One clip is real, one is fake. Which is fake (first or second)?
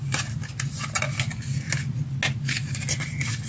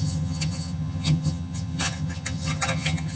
second